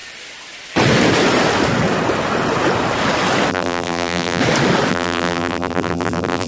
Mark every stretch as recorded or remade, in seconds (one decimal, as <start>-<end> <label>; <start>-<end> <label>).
0.0-3.5 recorded; 3.5-4.4 remade; 4.4-4.9 recorded; 4.9-6.5 remade